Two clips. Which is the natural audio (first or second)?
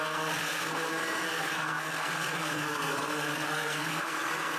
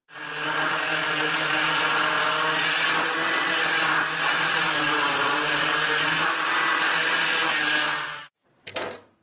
second